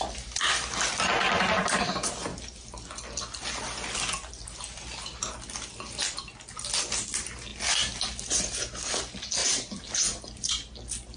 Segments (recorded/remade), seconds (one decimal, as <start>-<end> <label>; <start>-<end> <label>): 0.0-11.2 recorded